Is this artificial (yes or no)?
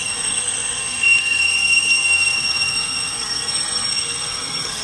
yes